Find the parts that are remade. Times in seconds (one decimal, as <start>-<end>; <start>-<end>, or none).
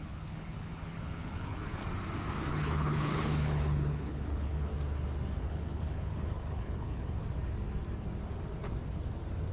0.0-1.8; 2.5-4.7; 5.4-7.2